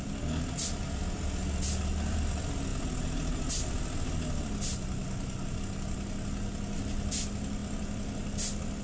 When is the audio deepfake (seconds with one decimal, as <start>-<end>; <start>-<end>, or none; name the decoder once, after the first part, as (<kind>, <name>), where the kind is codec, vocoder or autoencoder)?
none